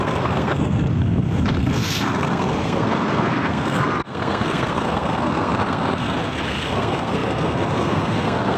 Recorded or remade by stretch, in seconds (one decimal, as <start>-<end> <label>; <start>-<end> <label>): 0.0-8.6 remade